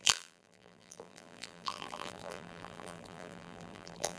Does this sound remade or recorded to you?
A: remade